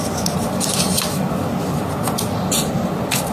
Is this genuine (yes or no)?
yes